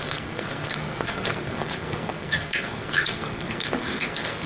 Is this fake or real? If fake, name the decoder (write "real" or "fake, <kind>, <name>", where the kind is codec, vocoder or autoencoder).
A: fake, codec, SNAC